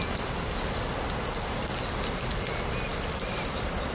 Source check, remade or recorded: recorded